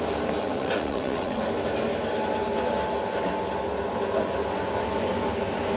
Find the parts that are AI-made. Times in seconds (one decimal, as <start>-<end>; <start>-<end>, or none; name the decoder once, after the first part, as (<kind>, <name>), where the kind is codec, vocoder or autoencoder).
0.4-1.4 (vocoder, WaveNeXt)

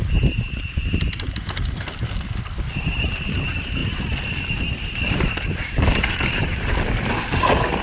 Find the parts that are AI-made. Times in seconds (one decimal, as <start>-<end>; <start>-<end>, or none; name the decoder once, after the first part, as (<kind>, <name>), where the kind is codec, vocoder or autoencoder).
3.8-5.3 (vocoder, BigVGAN v2)

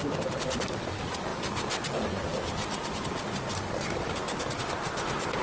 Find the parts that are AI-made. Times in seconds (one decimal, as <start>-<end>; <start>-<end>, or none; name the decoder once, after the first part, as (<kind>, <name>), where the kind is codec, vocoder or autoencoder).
none

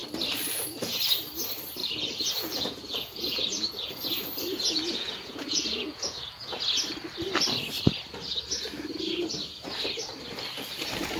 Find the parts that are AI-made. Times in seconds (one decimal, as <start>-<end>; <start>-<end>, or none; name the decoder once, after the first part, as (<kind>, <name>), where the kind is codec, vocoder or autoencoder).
1.8-6.6 (vocoder, Vocos)

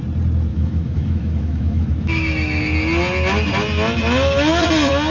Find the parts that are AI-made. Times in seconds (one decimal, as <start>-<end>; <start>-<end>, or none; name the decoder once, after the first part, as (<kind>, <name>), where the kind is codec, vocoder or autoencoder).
0.5-2.6 (autoencoder, DAC-VAE)